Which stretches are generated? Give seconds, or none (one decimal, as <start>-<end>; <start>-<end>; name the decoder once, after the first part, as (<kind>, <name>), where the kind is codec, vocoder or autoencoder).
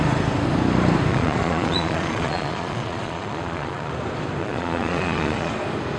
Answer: 1.1-3.9 (vocoder, Vocos); 4.4-5.5